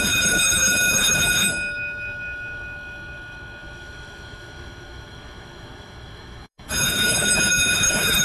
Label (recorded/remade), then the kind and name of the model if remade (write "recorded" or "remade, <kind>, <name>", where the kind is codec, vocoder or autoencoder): remade, autoencoder, DAC-VAE